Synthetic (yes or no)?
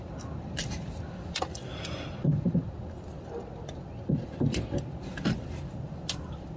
no